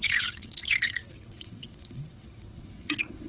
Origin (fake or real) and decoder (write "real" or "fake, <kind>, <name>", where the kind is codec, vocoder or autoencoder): fake, vocoder, WaveNeXt